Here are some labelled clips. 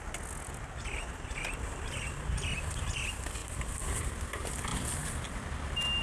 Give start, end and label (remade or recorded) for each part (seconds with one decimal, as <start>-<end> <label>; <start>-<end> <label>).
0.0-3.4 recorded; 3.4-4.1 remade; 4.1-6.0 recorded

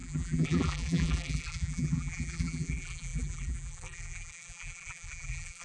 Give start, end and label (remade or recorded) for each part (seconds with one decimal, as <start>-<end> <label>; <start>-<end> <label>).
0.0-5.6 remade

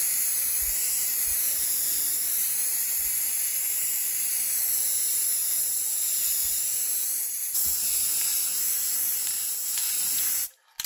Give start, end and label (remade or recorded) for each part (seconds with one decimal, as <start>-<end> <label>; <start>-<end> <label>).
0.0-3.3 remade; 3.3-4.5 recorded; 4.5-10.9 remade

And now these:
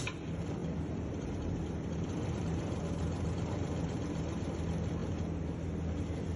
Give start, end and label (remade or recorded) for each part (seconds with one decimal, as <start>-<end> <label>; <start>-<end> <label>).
0.0-0.6 recorded; 0.6-4.4 remade; 4.4-6.4 recorded

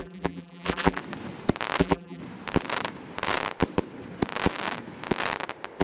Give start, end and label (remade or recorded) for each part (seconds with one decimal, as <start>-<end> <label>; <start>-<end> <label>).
0.0-1.0 remade; 1.0-1.8 recorded; 1.8-2.2 remade; 2.2-5.8 recorded